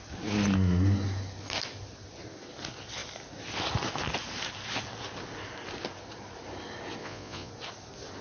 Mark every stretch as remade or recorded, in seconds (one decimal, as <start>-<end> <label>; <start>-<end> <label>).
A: 0.0-7.0 recorded; 7.0-7.5 remade; 7.5-8.2 recorded